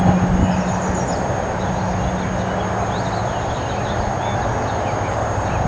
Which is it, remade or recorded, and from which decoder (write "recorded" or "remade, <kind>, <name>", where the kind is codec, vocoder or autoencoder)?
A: recorded